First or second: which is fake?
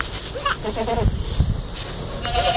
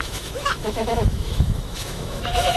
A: second